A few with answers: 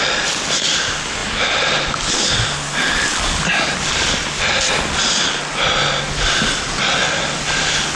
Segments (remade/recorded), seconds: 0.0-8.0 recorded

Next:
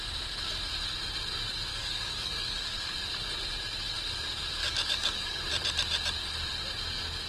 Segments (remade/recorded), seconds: 0.0-1.7 recorded; 1.7-2.9 remade; 2.9-4.6 recorded; 4.6-5.4 remade; 5.4-7.3 recorded

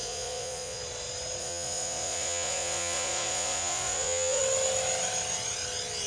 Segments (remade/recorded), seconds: 0.0-0.8 remade; 0.8-1.4 recorded; 1.4-4.4 remade; 4.4-6.1 recorded

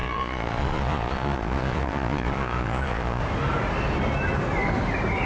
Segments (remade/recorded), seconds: 0.0-3.2 remade; 3.2-5.3 recorded

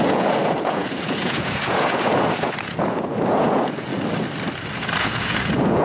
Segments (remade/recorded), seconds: 0.0-3.9 remade; 3.9-4.7 recorded; 4.7-5.8 remade

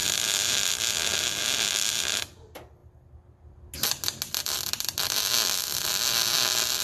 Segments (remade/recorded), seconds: 0.0-0.7 remade; 0.7-6.8 recorded

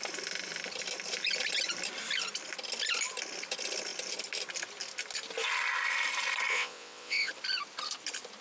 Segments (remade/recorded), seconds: 0.0-6.5 recorded; 6.5-7.3 remade; 7.3-8.4 recorded